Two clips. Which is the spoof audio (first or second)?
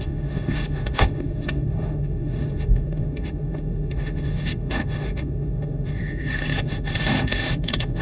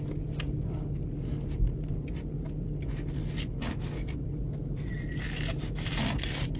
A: first